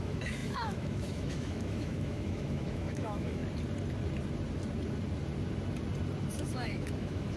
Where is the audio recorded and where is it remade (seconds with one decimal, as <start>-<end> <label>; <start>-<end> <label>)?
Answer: 0.0-3.4 remade; 3.4-6.5 recorded; 6.5-7.4 remade